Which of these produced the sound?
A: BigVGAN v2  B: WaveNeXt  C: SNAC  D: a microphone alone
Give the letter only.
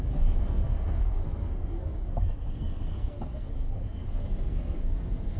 C